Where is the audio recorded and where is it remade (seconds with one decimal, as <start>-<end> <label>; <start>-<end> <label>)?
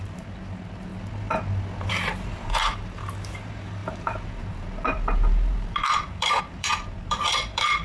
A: 0.0-0.9 remade; 0.9-1.9 recorded; 1.9-7.8 remade